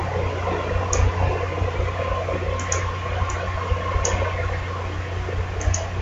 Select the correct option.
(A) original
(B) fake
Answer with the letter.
A